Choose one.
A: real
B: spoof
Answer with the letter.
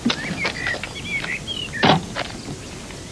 A